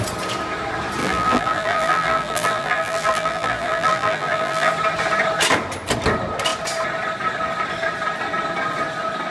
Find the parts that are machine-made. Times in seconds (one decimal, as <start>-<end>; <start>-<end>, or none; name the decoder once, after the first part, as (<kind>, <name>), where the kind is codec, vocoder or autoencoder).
1.0-4.7 (vocoder, BigVGAN v2)